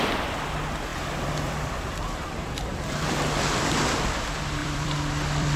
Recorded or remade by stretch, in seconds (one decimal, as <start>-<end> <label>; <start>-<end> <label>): 0.0-0.9 recorded; 0.9-3.4 remade; 3.4-4.6 recorded; 4.6-5.6 remade